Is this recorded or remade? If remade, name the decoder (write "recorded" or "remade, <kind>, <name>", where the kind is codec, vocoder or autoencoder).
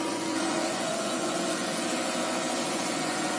remade, vocoder, Vocos